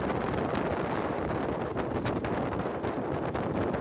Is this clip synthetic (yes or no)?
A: no